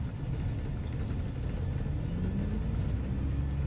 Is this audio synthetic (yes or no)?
no